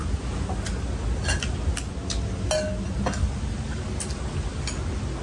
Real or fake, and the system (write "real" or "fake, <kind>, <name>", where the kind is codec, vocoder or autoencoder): real